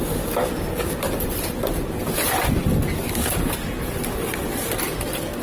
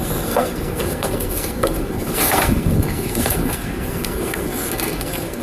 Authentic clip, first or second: first